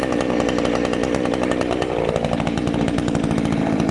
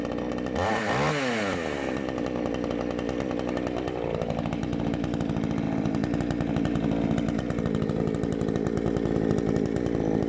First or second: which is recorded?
second